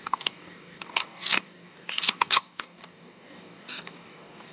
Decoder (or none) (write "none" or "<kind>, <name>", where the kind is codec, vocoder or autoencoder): codec, DAC